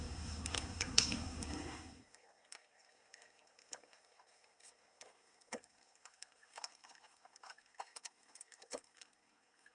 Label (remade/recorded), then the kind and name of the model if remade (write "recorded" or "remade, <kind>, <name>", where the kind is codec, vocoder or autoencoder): remade, codec, SNAC